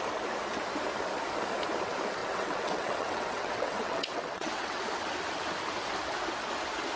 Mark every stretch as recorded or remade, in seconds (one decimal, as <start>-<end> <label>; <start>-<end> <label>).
0.0-2.2 recorded; 2.2-4.8 remade; 4.8-7.0 recorded